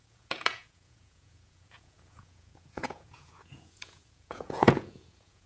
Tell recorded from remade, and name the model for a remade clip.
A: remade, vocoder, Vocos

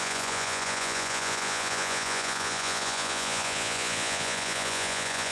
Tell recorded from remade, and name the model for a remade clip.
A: remade, vocoder, Vocos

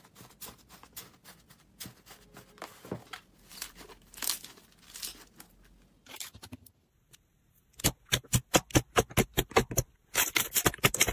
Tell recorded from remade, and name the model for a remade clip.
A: recorded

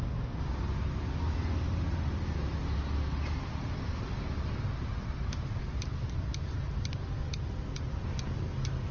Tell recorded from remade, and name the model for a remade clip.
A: recorded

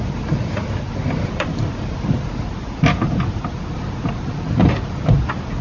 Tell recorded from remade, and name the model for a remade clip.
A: remade, vocoder, BigVGAN v2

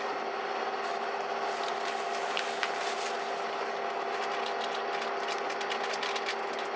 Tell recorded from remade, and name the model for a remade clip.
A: recorded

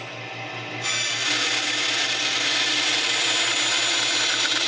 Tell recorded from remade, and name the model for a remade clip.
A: recorded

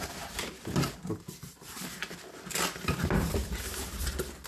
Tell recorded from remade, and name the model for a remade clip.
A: remade, vocoder, BigVGAN v2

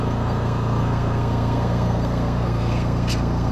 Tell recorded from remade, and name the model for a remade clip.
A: remade, codec, SNAC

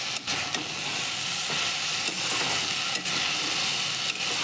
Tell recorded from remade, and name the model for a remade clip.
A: recorded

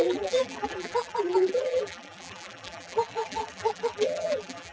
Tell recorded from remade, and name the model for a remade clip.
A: remade, vocoder, BigVGAN v2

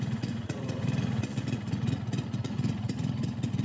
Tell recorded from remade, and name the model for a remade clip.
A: remade, vocoder, Vocos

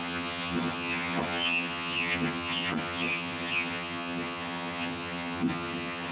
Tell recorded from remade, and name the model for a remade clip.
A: remade, vocoder, HiFi-GAN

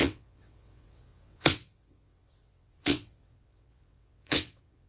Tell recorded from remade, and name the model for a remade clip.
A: remade, vocoder, WaveNeXt